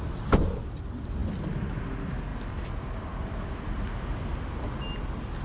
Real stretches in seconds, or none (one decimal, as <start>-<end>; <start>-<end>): 0.0-2.3; 4.5-5.4